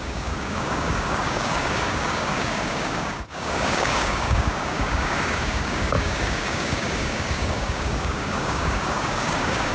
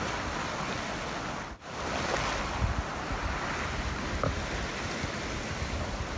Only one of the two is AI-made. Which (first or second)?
first